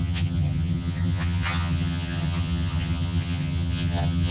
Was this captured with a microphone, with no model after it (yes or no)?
no